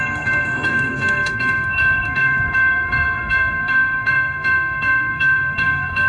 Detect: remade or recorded remade